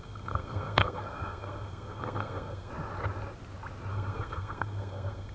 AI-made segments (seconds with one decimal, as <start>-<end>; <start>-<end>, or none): 0.0-2.7; 3.9-5.3